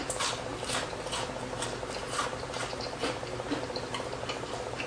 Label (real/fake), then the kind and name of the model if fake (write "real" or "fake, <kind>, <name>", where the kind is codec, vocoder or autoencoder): fake, vocoder, BigVGAN v2